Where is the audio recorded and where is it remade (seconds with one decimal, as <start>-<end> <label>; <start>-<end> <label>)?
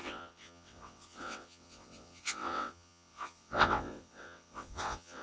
0.0-5.2 remade